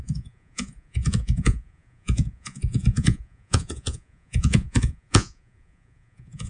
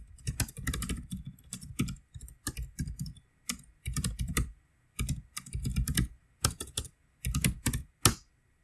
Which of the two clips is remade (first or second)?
first